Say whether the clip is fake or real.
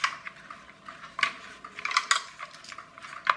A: real